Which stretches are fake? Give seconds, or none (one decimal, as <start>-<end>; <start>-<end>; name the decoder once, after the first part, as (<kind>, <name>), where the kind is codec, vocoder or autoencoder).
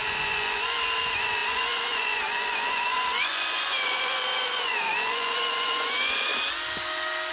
0.0-6.3 (vocoder, Vocos)